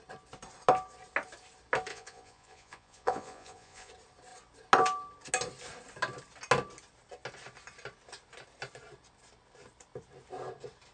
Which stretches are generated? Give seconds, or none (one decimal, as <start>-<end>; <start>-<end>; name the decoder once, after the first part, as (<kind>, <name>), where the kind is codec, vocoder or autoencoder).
1.9-3.9 (vocoder, Vocos)